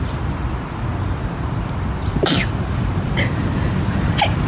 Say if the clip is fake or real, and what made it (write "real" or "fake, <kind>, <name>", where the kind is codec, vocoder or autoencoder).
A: real